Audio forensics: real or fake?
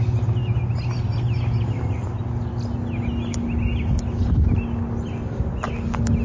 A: real